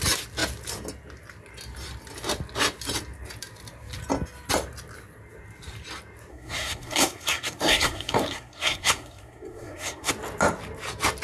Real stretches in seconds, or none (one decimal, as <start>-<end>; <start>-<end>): 0.0-6.3; 10.1-11.2